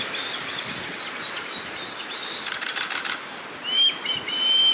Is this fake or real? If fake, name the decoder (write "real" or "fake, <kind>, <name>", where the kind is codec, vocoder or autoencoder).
real